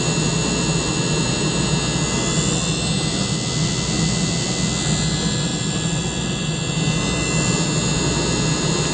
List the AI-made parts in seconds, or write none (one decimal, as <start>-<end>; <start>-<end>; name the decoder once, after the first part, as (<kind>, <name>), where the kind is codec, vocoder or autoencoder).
none

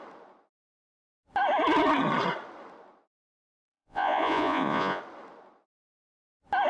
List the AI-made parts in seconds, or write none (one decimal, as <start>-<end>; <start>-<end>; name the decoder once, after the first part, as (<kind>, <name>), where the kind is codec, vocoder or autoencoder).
3.4-5.0 (vocoder, Vocos)

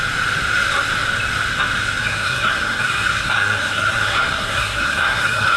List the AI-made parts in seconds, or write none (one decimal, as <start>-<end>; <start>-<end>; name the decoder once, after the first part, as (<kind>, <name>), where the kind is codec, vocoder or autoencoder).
2.0-5.6 (codec, SNAC)

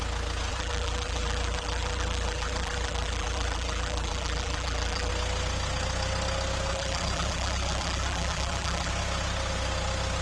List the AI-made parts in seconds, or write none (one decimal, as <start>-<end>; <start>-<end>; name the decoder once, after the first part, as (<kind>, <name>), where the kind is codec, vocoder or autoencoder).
0.5-5.1 (vocoder, BigVGAN v2); 6.7-8.9

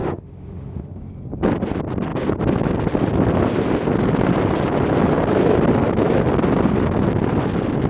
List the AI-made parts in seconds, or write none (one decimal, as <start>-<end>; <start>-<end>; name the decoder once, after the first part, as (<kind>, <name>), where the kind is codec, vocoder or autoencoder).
0.0-1.0 (autoencoder, DAC-VAE)